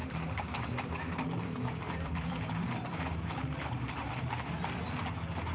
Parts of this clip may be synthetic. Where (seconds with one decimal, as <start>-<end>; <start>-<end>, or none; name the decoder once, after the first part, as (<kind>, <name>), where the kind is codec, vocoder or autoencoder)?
0.0-3.3 (vocoder, BigVGAN v2); 4.0-4.6